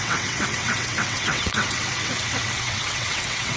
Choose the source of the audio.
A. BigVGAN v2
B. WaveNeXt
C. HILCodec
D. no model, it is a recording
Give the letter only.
B